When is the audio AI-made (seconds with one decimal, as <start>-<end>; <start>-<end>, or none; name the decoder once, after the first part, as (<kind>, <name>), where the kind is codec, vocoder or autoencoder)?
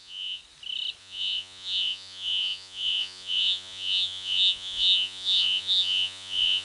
0.0-0.4 (vocoder, Vocos); 1.0-6.6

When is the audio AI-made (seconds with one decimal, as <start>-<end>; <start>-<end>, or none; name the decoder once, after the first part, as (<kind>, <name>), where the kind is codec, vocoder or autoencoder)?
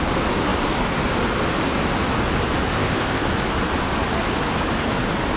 2.7-3.2 (codec, ZipCodec)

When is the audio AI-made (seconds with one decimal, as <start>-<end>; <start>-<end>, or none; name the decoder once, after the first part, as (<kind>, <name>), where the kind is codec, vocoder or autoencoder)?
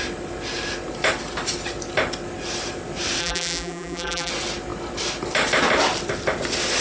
3.2-4.3 (vocoder, BigVGAN v2)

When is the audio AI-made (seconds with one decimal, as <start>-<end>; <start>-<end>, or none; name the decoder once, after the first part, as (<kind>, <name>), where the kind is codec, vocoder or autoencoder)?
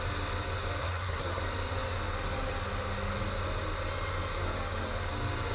0.8-1.4 (codec, SNAC)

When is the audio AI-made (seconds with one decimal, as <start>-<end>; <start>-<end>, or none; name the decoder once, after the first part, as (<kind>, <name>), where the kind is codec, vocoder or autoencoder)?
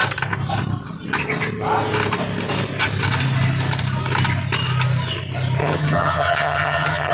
5.6-7.1 (vocoder, HiFi-GAN)